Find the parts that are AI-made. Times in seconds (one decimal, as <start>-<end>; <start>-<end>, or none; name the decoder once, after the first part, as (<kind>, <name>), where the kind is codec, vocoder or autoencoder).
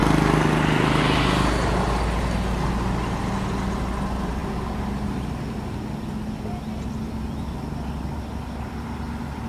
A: none